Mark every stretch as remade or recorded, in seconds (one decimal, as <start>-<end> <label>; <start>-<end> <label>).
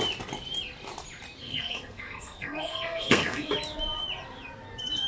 0.0-1.4 recorded; 1.4-3.5 remade; 3.5-5.1 recorded